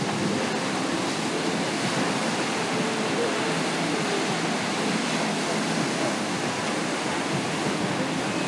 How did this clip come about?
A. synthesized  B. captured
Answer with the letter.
B